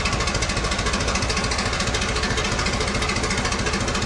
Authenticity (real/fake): real